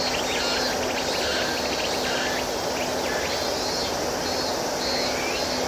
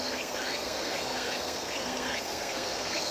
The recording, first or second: first